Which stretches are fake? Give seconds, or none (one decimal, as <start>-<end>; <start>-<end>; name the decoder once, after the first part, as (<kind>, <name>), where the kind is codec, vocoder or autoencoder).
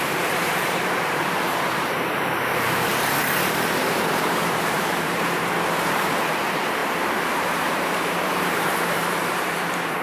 0.0-2.9 (vocoder, BigVGAN v2); 3.8-10.0